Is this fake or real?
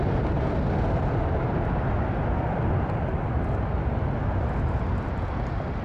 real